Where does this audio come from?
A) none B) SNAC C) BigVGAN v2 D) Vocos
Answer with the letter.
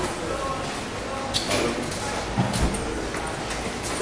A